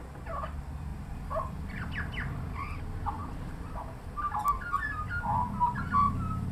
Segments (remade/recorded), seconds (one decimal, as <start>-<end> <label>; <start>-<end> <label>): 0.0-0.9 recorded; 0.9-2.8 remade; 2.8-6.5 recorded